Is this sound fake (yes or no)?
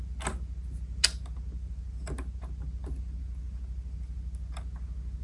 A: no